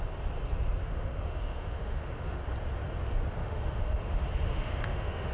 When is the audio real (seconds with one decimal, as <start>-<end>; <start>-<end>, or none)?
0.0-0.8; 2.4-3.4